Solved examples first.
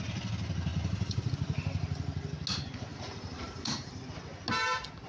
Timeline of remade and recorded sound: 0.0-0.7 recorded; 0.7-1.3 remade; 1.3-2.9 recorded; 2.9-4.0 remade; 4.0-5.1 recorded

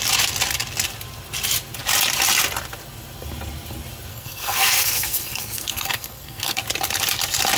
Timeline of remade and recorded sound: 0.0-4.1 recorded; 4.1-6.6 remade; 6.6-7.6 recorded

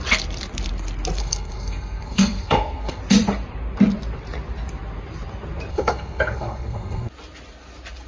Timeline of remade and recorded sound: 0.0-1.2 recorded; 1.2-3.0 remade; 3.0-5.7 recorded; 5.7-7.1 remade; 7.1-8.1 recorded

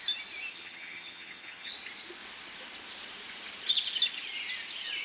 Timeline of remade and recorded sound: 0.0-0.5 recorded; 0.5-1.7 remade; 1.7-5.0 recorded

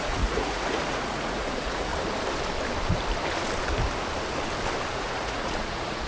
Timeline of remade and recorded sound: 0.0-1.9 remade; 1.9-4.9 recorded; 4.9-6.1 remade

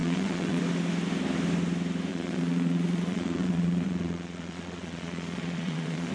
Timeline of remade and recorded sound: 0.0-0.6 remade; 0.6-2.1 recorded; 2.1-6.1 remade

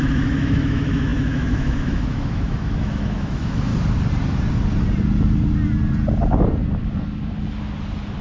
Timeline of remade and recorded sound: 0.0-3.7 remade; 3.7-8.2 recorded

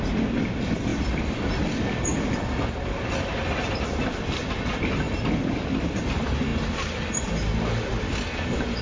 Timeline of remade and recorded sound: 0.0-2.1 recorded; 2.1-3.1 remade; 3.1-6.5 recorded; 6.5-7.2 remade; 7.2-8.8 recorded